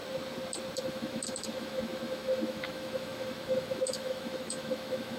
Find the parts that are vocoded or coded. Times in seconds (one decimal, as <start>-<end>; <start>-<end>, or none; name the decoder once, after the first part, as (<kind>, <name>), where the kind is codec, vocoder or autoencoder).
0.8-5.2 (autoencoder, DAC-VAE)